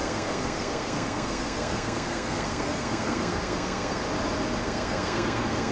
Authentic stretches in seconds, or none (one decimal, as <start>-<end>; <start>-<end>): 4.0-4.6